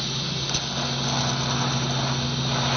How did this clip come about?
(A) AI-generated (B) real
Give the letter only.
B